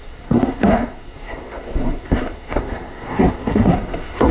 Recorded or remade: remade